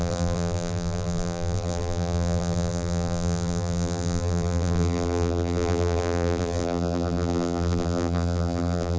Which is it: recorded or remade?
remade